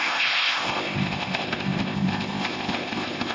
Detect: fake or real fake